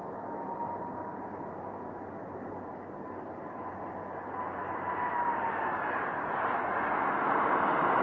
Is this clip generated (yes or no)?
no